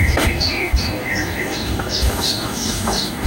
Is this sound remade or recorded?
remade